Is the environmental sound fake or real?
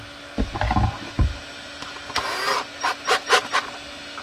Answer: real